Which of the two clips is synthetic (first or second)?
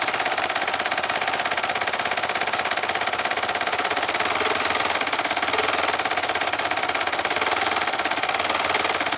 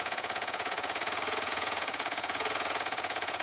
second